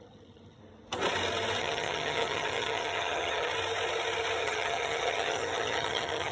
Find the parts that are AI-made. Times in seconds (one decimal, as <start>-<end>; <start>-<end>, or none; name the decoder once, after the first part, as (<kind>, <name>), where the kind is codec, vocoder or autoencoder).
0.0-0.6 (vocoder, HiFi-GAN); 1.6-3.5; 4.4-6.3